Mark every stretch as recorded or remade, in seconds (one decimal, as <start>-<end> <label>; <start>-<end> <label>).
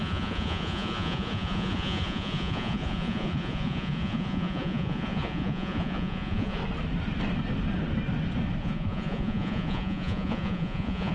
0.0-6.6 remade; 6.6-8.6 recorded; 8.6-11.1 remade